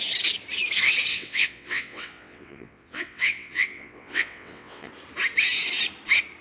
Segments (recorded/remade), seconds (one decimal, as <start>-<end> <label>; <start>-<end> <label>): 0.0-1.1 recorded; 1.1-4.9 remade; 4.9-6.4 recorded